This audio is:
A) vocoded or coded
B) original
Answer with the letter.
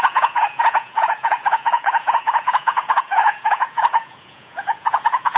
A